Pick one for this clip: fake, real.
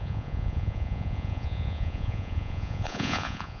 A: fake